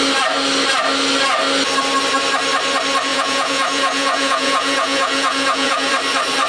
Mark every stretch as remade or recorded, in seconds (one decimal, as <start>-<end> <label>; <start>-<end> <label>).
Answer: 0.0-3.1 recorded; 3.1-5.9 remade; 5.9-6.5 recorded